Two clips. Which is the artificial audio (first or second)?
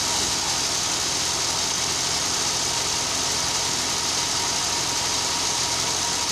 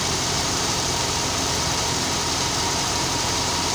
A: second